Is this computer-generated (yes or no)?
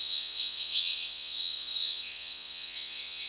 yes